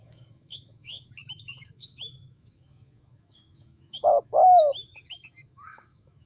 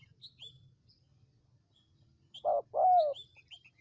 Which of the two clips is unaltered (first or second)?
second